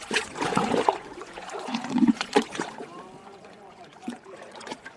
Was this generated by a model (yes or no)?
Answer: yes